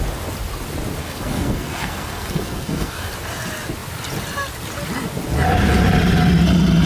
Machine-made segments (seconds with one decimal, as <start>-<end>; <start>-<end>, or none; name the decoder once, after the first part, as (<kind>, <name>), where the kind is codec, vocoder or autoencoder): 1.0-3.1 (codec, SNAC)